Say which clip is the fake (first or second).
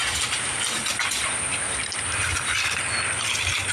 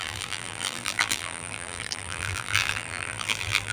second